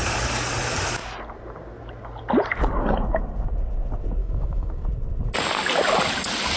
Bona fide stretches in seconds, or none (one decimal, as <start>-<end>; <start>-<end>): 0.0-4.2; 4.8-6.6